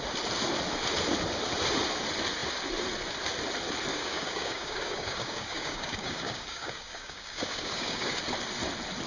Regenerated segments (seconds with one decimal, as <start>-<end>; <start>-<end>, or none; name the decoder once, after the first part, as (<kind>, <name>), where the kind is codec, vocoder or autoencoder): 3.9-8.2 (codec, DAC)